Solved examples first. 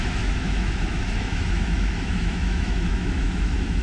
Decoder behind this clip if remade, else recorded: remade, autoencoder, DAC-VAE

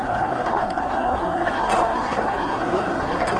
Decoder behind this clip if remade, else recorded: remade, codec, SNAC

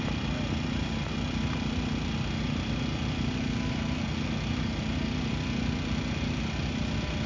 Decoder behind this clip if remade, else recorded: recorded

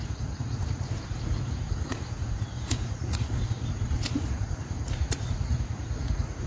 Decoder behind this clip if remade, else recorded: remade, vocoder, Vocos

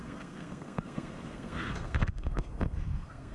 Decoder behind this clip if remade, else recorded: remade, codec, SNAC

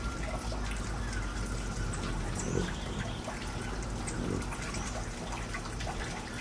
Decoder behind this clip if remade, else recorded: recorded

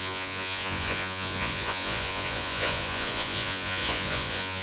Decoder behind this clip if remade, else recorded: remade, vocoder, Vocos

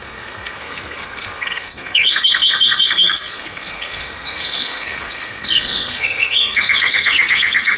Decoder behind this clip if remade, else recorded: remade, codec, SNAC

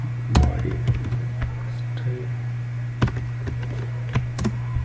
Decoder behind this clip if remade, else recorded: recorded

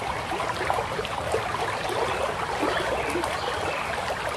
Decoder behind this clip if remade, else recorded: recorded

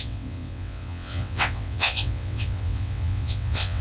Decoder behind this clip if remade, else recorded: remade, vocoder, WaveNeXt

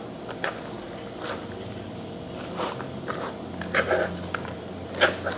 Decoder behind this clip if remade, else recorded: remade, vocoder, BigVGAN v2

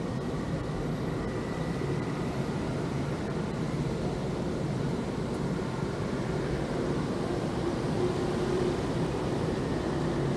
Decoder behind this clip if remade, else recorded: remade, vocoder, BigVGAN v2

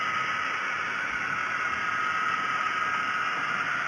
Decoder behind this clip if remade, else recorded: recorded